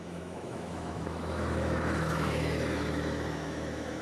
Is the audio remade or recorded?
remade